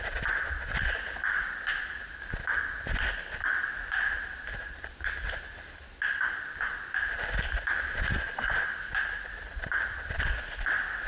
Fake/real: real